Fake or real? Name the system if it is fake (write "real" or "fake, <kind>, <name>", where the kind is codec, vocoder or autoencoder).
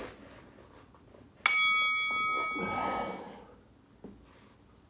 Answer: real